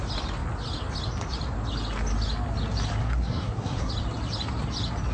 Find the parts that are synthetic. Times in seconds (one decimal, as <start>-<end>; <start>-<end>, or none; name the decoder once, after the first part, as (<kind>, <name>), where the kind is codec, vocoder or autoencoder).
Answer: 3.0-3.9 (codec, SNAC)